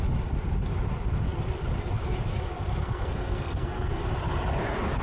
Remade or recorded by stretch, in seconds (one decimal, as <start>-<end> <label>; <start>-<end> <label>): 0.0-2.8 recorded; 2.8-4.0 remade; 4.0-5.0 recorded